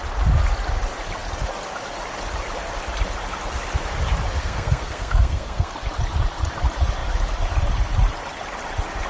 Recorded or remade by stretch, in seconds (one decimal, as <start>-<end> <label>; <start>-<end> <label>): 0.0-4.4 recorded; 4.4-5.7 remade; 5.7-9.1 recorded